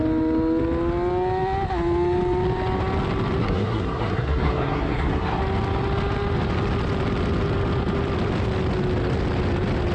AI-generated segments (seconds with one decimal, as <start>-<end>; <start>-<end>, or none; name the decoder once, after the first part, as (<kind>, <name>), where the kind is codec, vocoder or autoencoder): 3.4-5.4 (codec, SNAC)